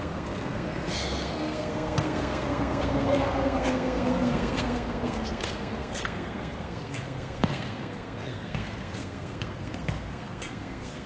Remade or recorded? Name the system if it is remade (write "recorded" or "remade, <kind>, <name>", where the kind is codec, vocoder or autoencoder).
remade, codec, SNAC